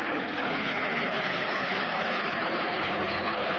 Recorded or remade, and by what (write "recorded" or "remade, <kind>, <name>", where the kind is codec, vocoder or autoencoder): remade, codec, HILCodec